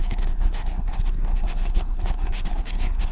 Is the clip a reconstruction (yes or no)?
yes